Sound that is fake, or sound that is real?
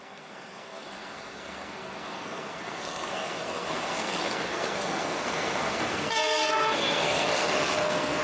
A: fake